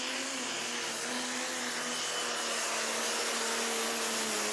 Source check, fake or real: real